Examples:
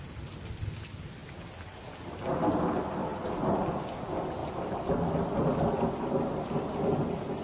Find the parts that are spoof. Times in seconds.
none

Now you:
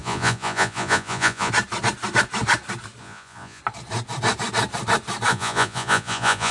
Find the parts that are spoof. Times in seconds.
0.0-1.5 (vocoder, Vocos); 3.0-3.6; 5.3-6.5

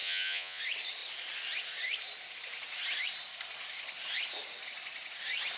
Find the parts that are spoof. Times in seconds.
0.0-0.6 (vocoder, Vocos)

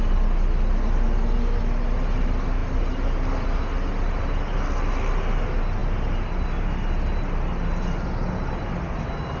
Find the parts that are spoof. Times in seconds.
none